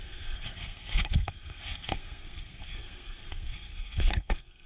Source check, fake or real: fake